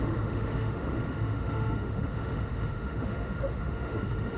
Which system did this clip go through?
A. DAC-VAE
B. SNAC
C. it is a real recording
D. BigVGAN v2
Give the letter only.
A